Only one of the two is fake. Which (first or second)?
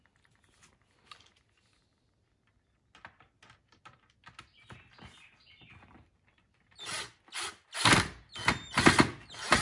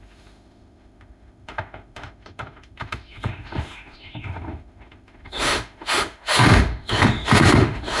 second